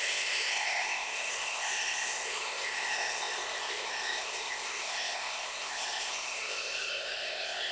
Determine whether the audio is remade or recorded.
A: remade